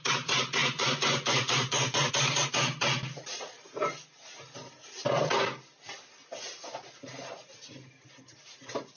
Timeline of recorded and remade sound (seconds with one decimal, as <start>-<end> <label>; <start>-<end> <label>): 0.0-0.6 recorded; 0.6-2.1 remade; 2.1-9.0 recorded